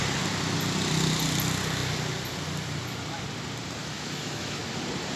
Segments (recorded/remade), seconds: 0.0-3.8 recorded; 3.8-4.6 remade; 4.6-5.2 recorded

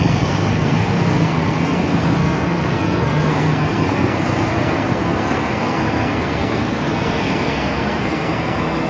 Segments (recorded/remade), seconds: 0.0-8.9 remade

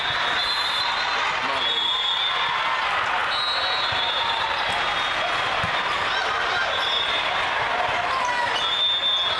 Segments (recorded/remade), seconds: 0.0-9.4 recorded

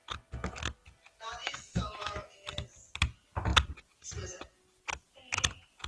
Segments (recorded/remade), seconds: 0.0-1.4 recorded; 1.4-2.5 remade; 2.5-5.9 recorded

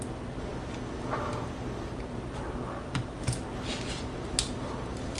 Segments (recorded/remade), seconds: 0.0-5.2 recorded

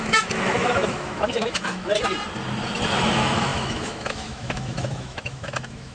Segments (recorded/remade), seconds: 0.0-1.9 remade; 1.9-3.0 recorded; 3.0-5.9 remade

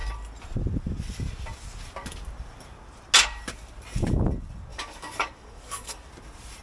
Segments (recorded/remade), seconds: 0.0-4.7 recorded; 4.7-6.1 remade; 6.1-6.6 recorded

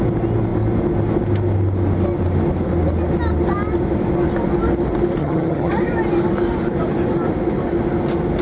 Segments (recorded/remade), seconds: 0.0-5.2 recorded; 5.2-5.7 remade; 5.7-8.4 recorded